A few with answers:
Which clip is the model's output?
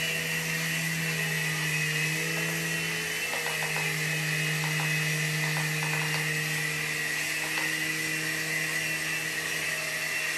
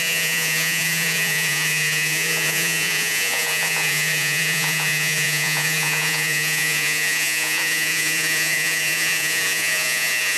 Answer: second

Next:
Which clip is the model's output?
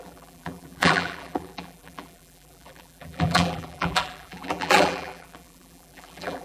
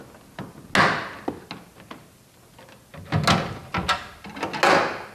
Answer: first